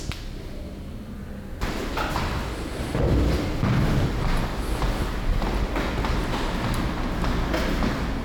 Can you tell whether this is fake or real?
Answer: real